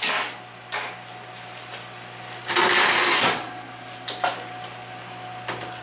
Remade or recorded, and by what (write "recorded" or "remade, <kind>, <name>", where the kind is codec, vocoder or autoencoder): recorded